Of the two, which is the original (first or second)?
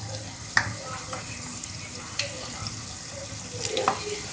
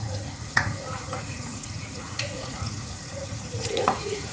first